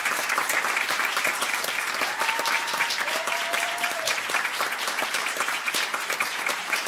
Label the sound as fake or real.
fake